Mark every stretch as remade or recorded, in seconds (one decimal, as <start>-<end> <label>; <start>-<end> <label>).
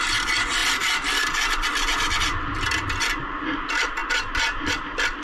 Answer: 0.0-5.2 recorded